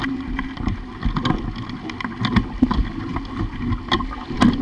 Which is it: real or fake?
real